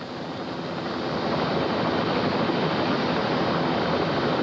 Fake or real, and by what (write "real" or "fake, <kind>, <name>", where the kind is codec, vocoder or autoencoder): real